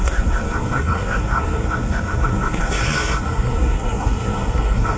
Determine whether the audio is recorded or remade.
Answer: remade